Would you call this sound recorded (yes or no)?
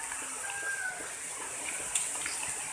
yes